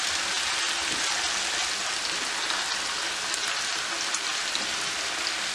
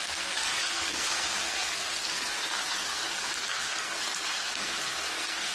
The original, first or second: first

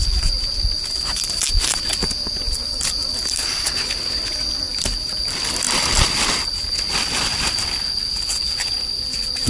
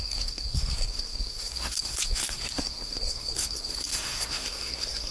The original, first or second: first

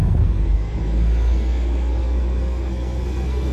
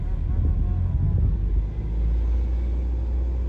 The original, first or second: second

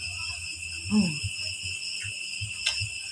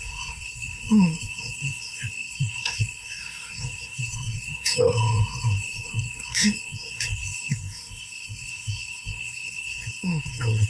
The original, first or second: first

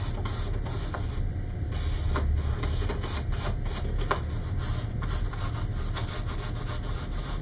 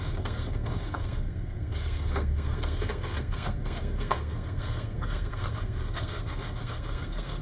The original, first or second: first